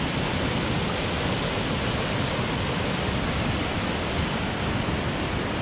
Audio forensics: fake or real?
real